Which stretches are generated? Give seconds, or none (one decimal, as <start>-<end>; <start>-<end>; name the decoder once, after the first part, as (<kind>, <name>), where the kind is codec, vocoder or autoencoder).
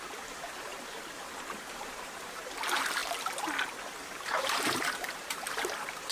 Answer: 0.0-0.7 (vocoder, BigVGAN v2); 1.6-3.0; 4.0-6.1